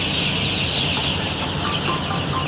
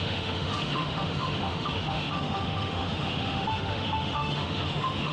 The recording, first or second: first